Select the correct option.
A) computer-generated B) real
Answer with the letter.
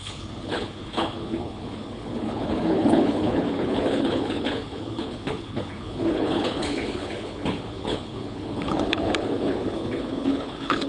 A